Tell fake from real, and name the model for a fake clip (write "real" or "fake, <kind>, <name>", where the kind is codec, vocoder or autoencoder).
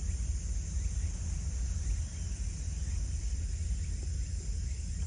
real